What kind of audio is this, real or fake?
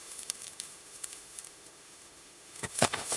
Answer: fake